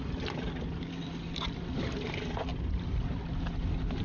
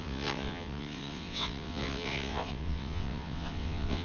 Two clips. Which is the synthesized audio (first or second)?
second